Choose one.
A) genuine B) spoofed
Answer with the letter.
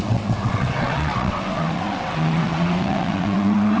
B